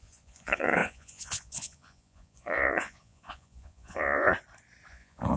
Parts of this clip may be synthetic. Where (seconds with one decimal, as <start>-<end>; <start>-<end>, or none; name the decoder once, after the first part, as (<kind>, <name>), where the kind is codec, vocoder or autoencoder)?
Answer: 0.0-4.3 (vocoder, Vocos); 4.9-5.4